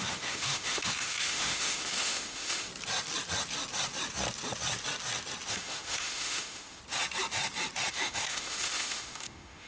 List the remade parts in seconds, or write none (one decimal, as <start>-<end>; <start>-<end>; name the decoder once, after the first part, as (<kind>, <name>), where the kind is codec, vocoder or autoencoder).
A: 0.0-2.7 (autoencoder, DAC-VAE); 5.5-6.8; 7.9-9.7